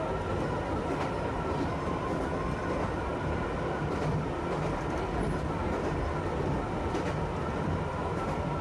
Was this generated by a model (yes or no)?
no